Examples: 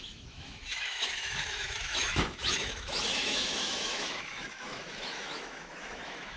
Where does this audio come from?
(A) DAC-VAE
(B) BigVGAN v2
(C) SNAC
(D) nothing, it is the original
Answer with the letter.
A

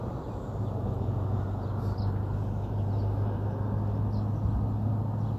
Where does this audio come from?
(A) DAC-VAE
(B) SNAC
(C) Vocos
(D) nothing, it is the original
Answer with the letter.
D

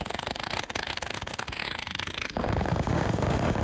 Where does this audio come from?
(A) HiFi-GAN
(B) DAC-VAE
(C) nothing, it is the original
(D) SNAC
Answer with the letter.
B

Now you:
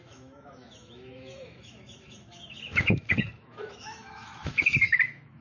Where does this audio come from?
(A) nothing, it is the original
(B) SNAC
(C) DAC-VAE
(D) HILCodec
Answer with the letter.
C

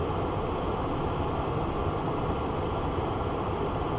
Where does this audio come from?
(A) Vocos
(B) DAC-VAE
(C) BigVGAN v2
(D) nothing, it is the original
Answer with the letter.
D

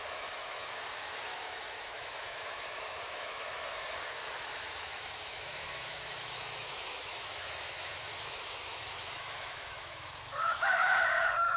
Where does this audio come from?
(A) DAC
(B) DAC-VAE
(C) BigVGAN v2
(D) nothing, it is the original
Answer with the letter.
B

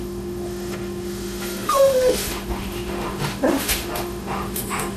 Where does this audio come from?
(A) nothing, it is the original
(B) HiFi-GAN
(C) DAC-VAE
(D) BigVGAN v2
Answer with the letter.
C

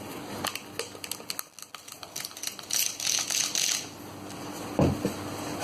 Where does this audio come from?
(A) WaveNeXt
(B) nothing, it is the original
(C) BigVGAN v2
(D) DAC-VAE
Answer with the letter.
B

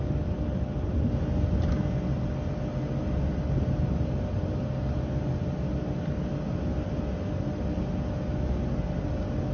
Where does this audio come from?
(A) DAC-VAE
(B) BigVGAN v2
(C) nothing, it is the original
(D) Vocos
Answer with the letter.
C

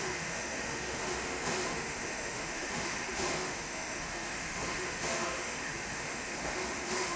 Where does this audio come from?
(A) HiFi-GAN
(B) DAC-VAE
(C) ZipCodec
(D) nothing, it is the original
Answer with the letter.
B